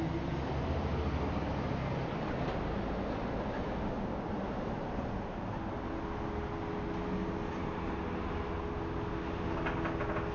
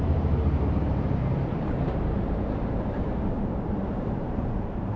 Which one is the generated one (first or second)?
second